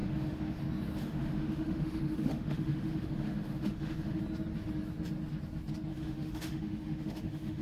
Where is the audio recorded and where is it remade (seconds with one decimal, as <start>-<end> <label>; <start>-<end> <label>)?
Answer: 0.0-0.6 remade; 0.6-1.0 recorded; 1.0-4.2 remade; 4.2-5.9 recorded; 5.9-7.6 remade